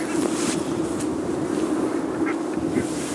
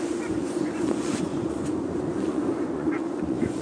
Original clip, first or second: first